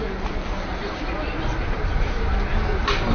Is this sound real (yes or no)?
yes